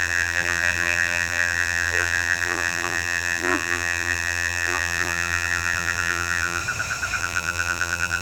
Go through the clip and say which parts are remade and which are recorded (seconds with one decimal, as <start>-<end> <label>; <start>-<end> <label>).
0.0-6.6 remade; 6.6-7.2 recorded; 7.2-8.2 remade